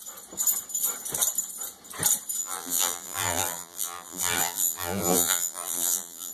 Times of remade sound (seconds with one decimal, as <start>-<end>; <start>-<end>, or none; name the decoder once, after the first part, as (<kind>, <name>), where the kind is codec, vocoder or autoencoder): 2.4-6.3 (vocoder, BigVGAN v2)